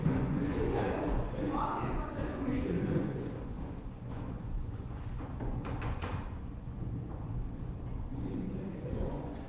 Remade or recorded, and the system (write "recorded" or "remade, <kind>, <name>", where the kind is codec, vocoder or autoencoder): remade, vocoder, Vocos